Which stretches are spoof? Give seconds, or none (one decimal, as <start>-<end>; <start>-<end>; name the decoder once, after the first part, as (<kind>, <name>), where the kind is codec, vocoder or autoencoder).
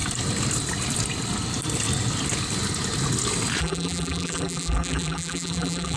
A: 3.6-6.0 (vocoder, BigVGAN v2)